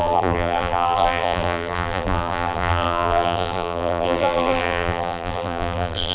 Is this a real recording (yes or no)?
no